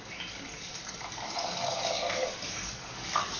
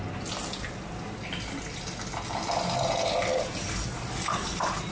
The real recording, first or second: second